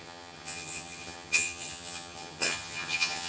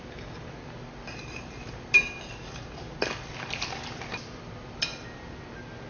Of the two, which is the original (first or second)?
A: second